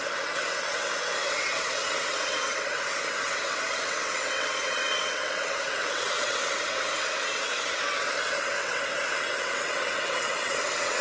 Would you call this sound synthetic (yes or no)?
yes